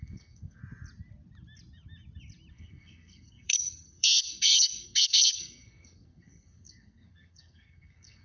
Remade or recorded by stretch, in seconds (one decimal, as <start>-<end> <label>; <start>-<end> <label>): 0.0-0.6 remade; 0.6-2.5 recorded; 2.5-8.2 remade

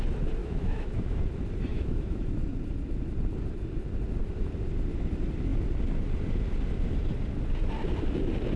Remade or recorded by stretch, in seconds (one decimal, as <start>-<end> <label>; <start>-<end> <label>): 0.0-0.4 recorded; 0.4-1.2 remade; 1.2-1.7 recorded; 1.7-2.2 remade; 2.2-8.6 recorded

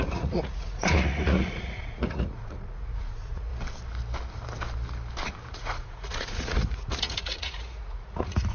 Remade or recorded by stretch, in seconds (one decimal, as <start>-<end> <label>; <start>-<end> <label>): 0.0-3.5 remade; 3.5-5.5 recorded; 5.5-8.5 remade

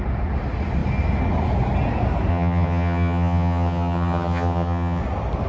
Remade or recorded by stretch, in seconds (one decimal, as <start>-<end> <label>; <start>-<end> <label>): 0.0-2.3 recorded; 2.3-5.0 remade; 5.0-5.5 recorded

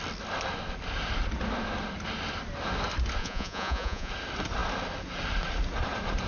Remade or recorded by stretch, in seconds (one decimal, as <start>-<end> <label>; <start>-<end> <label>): 0.0-3.2 recorded; 3.2-4.1 remade; 4.1-6.3 recorded

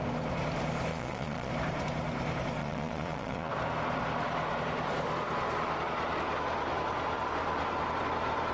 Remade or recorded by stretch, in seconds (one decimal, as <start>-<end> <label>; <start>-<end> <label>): 0.0-0.9 recorded; 0.9-1.5 remade; 1.5-2.6 recorded; 2.6-3.5 remade; 3.5-8.5 recorded